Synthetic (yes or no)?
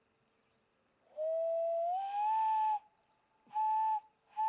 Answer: no